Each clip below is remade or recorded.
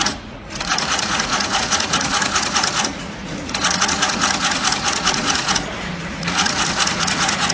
remade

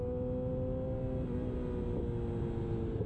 recorded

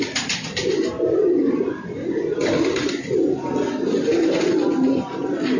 recorded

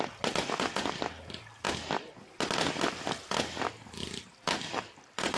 recorded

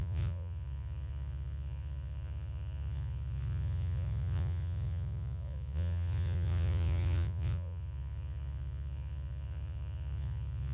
remade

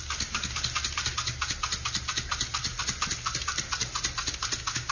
recorded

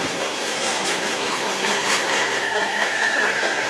remade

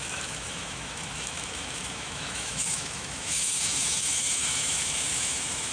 remade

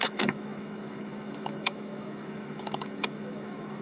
remade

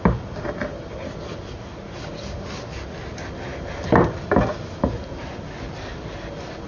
recorded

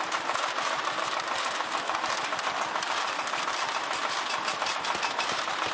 recorded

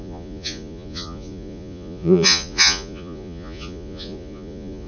remade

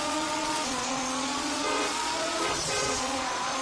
remade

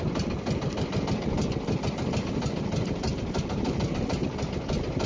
recorded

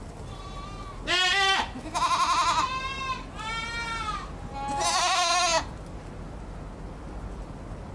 recorded